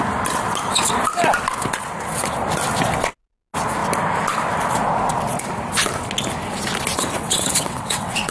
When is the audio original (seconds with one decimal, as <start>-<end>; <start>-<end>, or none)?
0.0-6.9